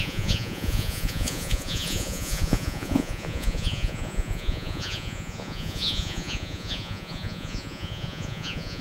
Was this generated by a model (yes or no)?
yes